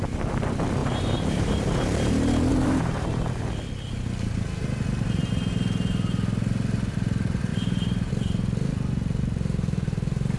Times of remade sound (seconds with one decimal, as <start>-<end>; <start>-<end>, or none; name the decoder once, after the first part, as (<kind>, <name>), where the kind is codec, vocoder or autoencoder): 0.8-2.1 (vocoder, BigVGAN v2); 2.5-3.5; 7.5-8.1